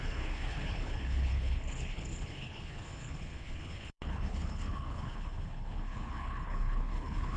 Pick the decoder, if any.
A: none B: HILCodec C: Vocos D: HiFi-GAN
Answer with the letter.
B